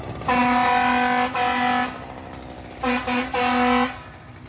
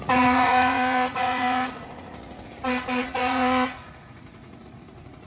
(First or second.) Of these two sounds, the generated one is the second